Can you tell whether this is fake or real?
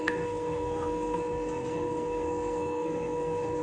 fake